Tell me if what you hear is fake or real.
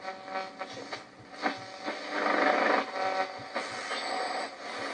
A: real